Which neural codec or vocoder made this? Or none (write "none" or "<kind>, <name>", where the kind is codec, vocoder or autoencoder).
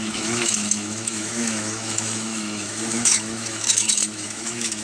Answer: autoencoder, DAC-VAE